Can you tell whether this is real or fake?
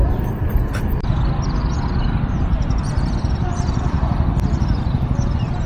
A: real